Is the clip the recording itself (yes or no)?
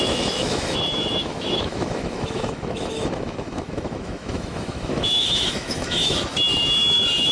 no